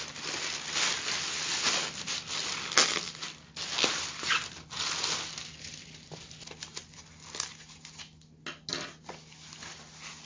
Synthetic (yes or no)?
no